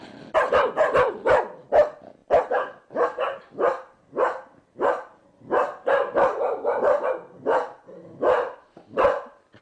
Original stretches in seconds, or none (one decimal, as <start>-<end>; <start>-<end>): 0.0-9.6